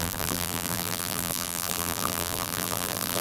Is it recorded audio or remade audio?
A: remade